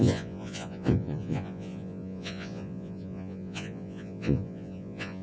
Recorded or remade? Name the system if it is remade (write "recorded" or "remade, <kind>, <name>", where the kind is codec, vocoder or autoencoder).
remade, vocoder, Vocos